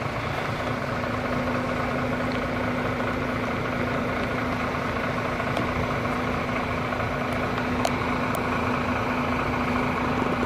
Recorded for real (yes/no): yes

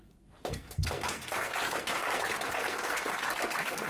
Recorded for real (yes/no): no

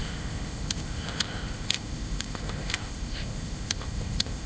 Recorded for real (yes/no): no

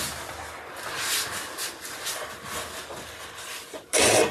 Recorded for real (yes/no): yes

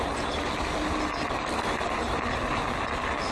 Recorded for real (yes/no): yes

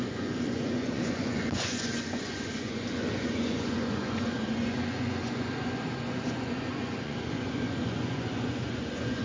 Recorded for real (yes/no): no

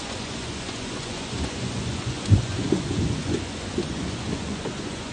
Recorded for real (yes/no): no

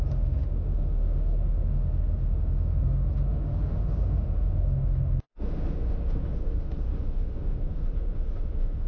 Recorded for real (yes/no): no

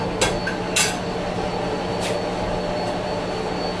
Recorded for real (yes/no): yes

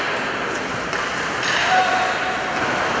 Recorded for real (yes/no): yes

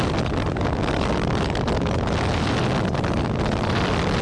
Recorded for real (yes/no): yes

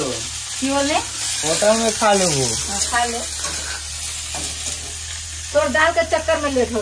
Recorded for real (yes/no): yes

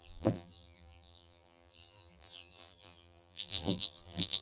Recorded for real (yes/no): no